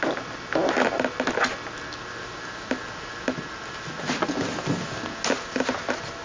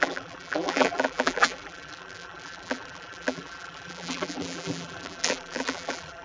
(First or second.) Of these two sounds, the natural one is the first